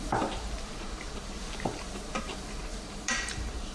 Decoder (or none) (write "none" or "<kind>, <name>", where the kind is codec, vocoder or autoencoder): vocoder, BigVGAN v2